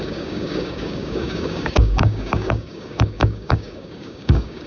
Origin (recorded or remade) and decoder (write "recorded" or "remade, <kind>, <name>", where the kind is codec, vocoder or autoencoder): remade, codec, DAC